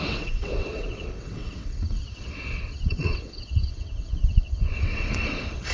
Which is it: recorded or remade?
remade